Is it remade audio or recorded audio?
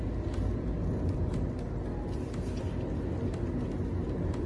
recorded